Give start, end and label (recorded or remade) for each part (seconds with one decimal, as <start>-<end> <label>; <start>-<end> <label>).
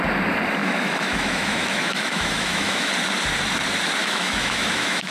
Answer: 0.0-0.6 recorded; 0.6-2.9 remade; 2.9-4.0 recorded; 4.0-5.1 remade